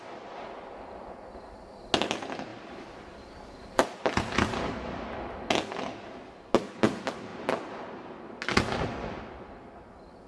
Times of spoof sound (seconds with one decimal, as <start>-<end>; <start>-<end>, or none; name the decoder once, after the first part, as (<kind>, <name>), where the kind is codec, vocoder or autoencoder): 2.5-5.5 (vocoder, BigVGAN v2)